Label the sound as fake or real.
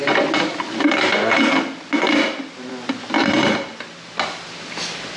real